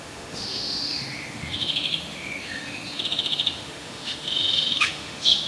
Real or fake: fake